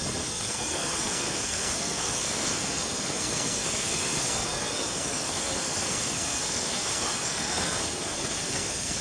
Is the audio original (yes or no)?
no